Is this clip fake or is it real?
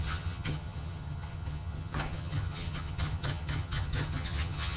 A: fake